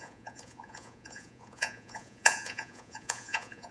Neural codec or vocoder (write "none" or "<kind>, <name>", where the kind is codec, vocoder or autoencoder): vocoder, Vocos